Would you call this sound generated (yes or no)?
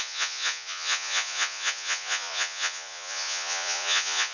yes